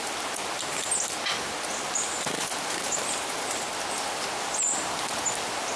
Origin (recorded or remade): recorded